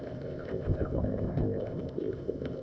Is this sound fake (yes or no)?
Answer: yes